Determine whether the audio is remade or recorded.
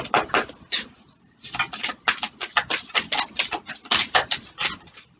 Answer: recorded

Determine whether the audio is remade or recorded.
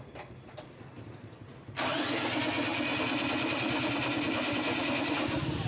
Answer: recorded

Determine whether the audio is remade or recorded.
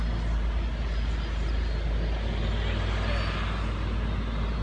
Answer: recorded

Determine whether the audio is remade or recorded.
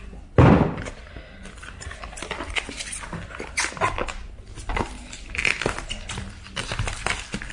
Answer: recorded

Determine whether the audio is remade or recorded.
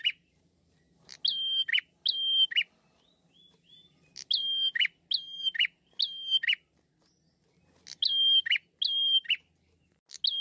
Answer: recorded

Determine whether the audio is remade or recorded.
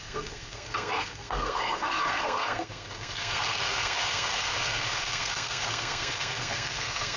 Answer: remade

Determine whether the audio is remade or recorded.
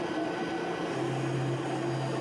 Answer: recorded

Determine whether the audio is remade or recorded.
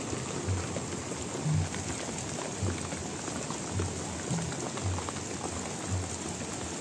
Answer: recorded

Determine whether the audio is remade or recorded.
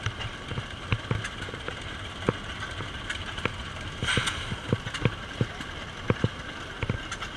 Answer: recorded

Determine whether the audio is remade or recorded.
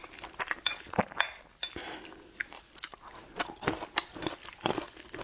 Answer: recorded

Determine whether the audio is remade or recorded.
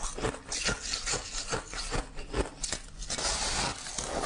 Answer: recorded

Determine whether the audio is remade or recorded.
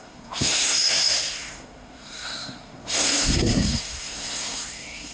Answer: remade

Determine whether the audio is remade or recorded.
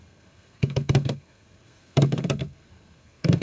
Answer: remade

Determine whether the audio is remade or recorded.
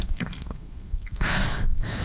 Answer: remade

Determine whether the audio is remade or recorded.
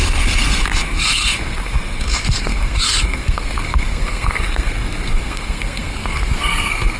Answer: remade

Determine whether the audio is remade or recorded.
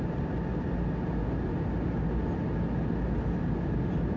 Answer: recorded